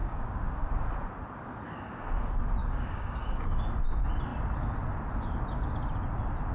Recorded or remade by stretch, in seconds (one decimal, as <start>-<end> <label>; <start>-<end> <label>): 0.0-0.7 remade; 0.7-2.6 recorded; 2.6-3.7 remade; 3.7-6.5 recorded